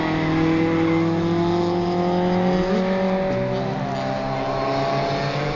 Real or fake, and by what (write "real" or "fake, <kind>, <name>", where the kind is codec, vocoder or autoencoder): real